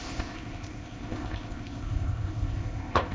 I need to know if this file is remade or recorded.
remade